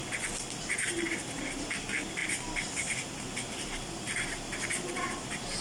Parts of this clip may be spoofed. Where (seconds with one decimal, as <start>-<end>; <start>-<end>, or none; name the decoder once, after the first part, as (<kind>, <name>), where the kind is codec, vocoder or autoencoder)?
0.7-5.6 (vocoder, BigVGAN v2)